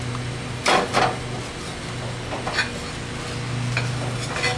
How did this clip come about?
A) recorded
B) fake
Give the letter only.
A